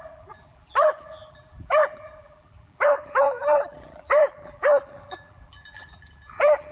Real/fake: fake